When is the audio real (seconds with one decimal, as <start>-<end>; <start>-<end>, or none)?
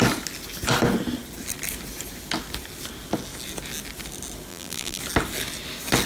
0.0-4.5; 5.0-6.1